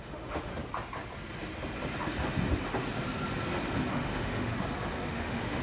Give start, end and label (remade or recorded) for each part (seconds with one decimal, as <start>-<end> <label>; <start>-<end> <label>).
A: 0.0-0.5 remade; 0.5-3.9 recorded; 3.9-4.5 remade; 4.5-5.1 recorded; 5.1-5.6 remade